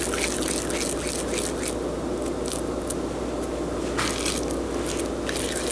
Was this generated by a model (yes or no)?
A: no